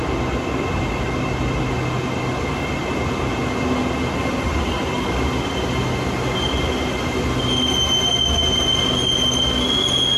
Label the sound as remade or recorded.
recorded